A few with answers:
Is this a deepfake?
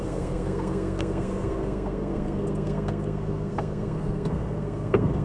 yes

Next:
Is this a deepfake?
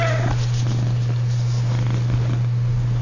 no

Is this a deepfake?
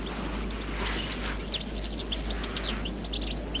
no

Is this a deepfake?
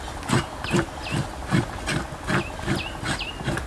no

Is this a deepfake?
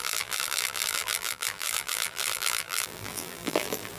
yes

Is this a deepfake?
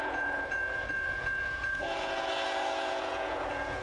yes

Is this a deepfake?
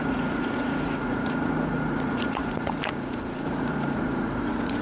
yes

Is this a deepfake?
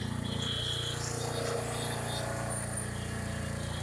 no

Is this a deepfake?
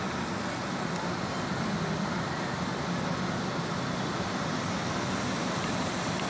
no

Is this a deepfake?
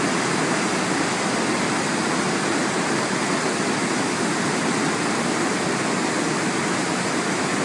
no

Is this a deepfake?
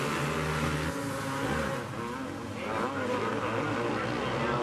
no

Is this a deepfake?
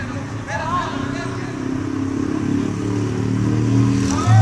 no